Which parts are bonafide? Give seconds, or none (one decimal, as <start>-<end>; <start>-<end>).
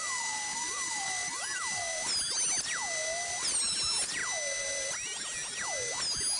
0.0-6.4